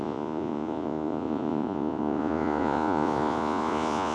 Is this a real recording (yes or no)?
no